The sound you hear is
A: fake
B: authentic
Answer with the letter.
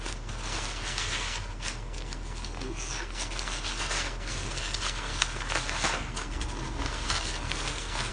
A